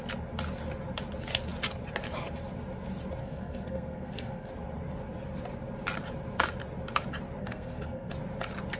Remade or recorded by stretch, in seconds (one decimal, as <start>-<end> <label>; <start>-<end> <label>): 0.0-3.2 recorded; 3.2-4.5 remade; 4.5-7.4 recorded; 7.4-8.1 remade; 8.1-8.8 recorded